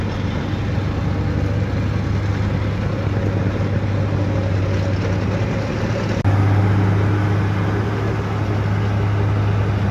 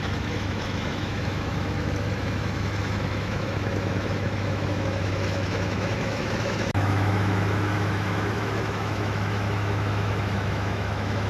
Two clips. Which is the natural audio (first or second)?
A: first